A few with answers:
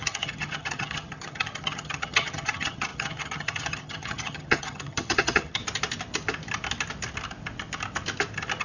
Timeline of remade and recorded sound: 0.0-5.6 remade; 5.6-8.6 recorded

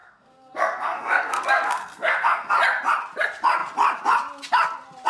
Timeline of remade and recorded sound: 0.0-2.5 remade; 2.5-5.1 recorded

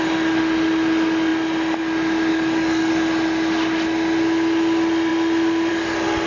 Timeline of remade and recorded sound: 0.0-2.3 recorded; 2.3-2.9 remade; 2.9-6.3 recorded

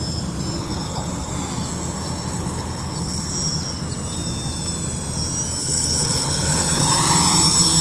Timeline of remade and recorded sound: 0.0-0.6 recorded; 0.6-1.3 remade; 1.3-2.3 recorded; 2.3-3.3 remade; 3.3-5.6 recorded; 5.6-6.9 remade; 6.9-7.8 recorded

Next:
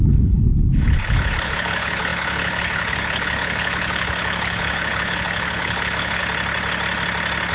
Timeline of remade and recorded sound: 0.0-6.2 remade; 6.2-7.5 recorded

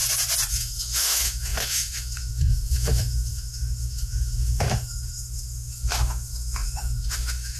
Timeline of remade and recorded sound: 0.0-0.5 recorded; 0.5-7.6 remade

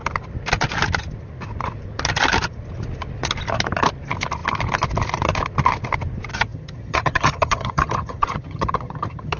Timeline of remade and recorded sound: 0.0-6.3 recorded; 6.3-9.4 remade

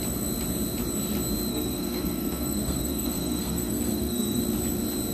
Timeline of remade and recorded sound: 0.0-1.5 recorded; 1.5-4.4 remade; 4.4-5.1 recorded